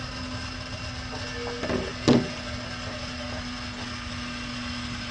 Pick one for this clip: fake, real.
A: real